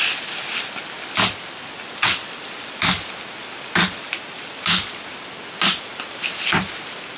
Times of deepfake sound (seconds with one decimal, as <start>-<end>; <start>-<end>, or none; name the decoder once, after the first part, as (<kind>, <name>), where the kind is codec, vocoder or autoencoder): none